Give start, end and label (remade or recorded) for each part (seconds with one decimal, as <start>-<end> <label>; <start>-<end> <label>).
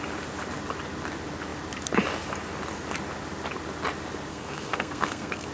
0.0-4.3 recorded; 4.3-5.5 remade